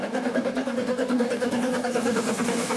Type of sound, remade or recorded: remade